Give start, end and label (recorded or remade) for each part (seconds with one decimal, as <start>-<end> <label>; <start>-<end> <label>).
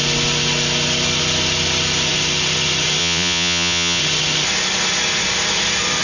0.0-3.0 recorded; 3.0-4.0 remade; 4.0-6.0 recorded